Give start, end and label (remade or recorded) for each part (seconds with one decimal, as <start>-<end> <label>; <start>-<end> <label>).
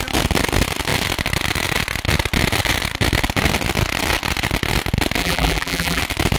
0.0-5.2 recorded; 5.2-6.0 remade; 6.0-6.4 recorded